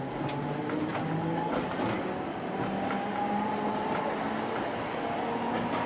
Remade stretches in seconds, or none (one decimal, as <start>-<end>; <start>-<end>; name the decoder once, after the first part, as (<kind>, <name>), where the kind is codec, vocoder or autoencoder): none